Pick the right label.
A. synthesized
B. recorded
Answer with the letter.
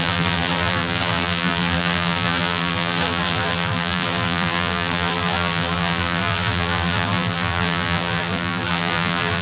A